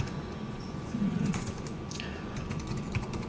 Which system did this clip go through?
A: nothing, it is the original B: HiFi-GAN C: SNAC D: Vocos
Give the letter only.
D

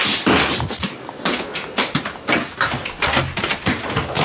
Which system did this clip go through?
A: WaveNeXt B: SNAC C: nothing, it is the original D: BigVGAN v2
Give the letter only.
C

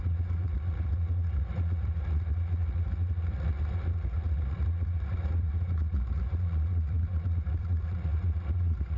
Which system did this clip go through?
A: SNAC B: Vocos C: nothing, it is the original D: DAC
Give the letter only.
B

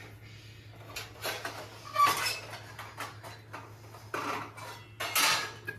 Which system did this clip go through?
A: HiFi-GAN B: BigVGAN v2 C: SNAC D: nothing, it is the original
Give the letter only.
D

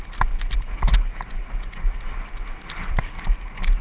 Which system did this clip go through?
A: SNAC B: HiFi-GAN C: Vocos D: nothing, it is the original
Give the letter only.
D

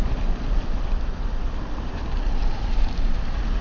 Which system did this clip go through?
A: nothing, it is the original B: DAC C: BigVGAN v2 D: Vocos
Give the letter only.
C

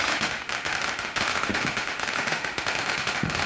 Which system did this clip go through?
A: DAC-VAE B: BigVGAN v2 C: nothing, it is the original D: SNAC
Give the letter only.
A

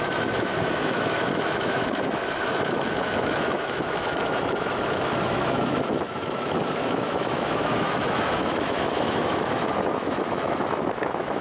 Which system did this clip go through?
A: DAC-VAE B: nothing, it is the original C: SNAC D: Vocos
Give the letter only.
A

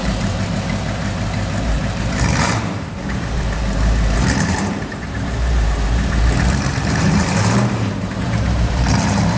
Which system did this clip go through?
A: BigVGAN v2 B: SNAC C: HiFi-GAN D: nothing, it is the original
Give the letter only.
A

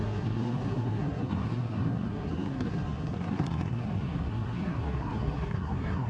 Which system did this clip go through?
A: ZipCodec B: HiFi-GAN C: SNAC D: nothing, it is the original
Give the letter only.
C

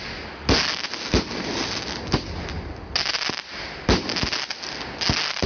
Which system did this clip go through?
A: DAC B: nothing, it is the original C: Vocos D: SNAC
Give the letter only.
B